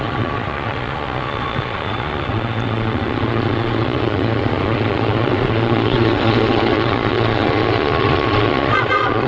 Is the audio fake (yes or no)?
yes